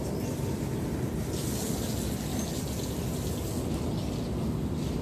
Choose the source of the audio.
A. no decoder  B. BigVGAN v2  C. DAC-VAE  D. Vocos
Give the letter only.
A